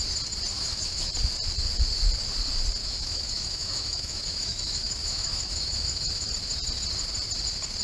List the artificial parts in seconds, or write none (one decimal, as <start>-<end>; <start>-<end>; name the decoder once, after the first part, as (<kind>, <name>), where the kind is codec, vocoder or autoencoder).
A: 0.5-1.1 (autoencoder, DAC-VAE); 2.8-6.3